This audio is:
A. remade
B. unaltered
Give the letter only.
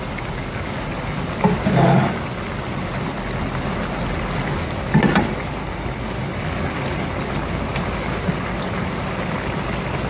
B